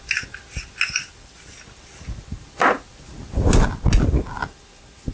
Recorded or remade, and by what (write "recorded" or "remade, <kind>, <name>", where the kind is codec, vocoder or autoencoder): recorded